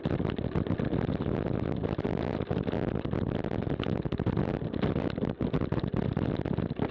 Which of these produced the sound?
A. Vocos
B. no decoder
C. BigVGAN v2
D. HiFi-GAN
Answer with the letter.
B